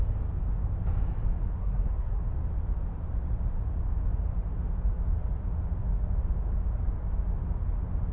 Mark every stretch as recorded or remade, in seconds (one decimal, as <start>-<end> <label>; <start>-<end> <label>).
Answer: 0.0-1.6 recorded; 1.6-2.2 remade; 2.2-8.1 recorded

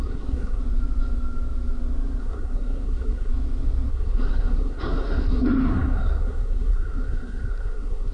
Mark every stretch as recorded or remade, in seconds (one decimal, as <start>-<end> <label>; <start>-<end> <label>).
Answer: 0.0-0.6 remade; 0.6-2.2 recorded; 2.2-3.3 remade; 3.3-3.9 recorded; 3.9-8.1 remade

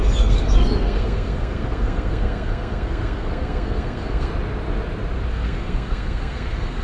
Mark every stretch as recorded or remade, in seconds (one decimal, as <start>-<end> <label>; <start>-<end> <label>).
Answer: 0.0-4.3 remade; 4.3-5.3 recorded; 5.3-6.8 remade

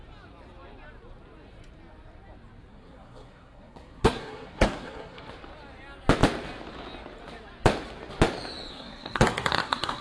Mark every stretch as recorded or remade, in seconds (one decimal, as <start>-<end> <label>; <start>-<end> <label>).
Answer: 0.0-2.7 recorded; 2.7-5.3 remade; 5.3-8.7 recorded; 8.7-10.0 remade

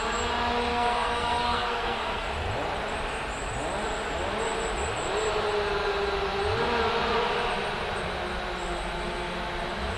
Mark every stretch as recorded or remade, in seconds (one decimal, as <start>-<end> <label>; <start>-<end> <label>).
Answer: 0.0-0.7 recorded; 0.7-2.3 remade; 2.3-10.0 recorded